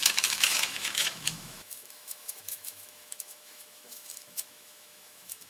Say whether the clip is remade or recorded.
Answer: remade